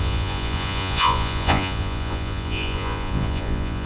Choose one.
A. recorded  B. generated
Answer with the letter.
B